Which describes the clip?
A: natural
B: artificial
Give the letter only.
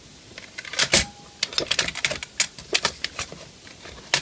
A